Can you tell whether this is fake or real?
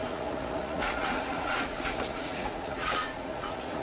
fake